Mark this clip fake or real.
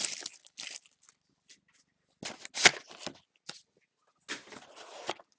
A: real